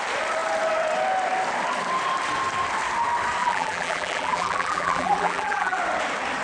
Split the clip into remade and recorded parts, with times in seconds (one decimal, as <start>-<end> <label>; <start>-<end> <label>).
0.0-3.4 recorded; 3.4-5.8 remade; 5.8-6.4 recorded